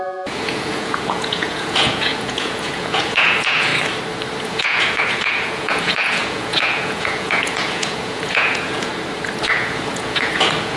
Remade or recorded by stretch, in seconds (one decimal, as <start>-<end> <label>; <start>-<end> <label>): 0.0-3.7 remade; 3.7-4.4 recorded; 4.4-8.9 remade; 8.9-9.5 recorded; 9.5-10.8 remade